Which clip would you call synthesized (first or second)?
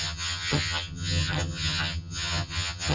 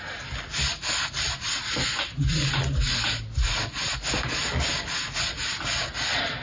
first